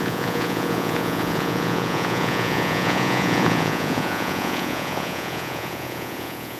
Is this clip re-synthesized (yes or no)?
yes